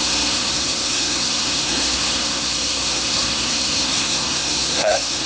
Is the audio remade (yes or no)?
yes